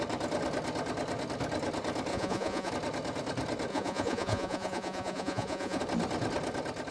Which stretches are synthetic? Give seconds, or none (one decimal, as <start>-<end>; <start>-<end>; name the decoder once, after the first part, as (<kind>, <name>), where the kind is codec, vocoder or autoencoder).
2.1-2.7 (vocoder, Vocos); 3.7-5.8